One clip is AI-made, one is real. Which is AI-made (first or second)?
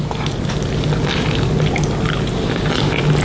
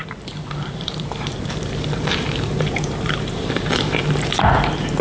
second